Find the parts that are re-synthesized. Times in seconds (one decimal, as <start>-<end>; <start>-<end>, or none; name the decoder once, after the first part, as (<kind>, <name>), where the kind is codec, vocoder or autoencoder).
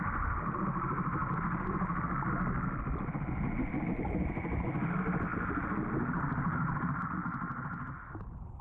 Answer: none